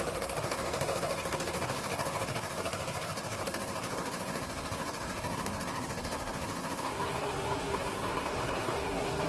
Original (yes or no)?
no